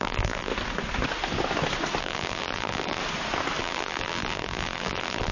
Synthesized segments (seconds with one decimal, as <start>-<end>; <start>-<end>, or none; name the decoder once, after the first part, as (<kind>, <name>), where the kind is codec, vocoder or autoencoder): 0.0-0.5 (vocoder, BigVGAN v2); 2.0-3.0; 3.6-5.3